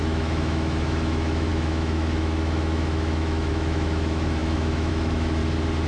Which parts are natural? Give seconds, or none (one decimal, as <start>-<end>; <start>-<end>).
5.4-5.9